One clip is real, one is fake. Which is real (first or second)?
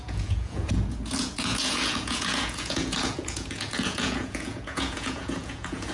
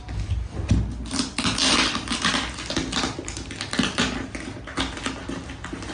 second